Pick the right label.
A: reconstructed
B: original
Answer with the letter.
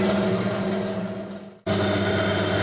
B